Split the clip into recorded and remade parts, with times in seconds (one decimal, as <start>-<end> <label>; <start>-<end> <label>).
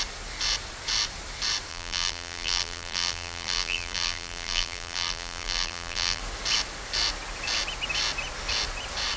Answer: 0.0-1.7 recorded; 1.7-6.2 remade; 6.2-9.2 recorded